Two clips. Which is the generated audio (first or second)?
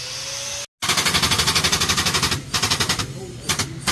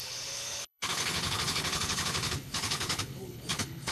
second